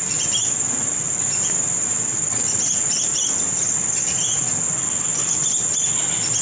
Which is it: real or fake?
real